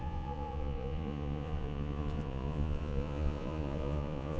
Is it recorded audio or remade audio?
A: remade